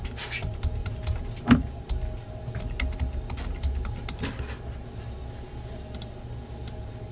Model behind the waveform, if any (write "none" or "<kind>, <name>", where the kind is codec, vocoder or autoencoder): none